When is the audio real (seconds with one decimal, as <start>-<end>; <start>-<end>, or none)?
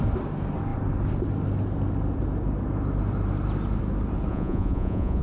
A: 0.0-4.3